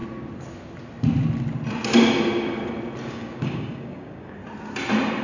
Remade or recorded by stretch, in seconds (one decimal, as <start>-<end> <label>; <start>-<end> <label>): 0.0-3.1 recorded; 3.1-4.4 remade; 4.4-5.2 recorded